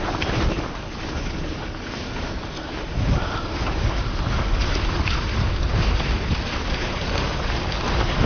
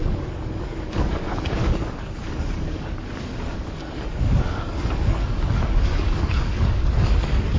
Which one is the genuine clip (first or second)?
first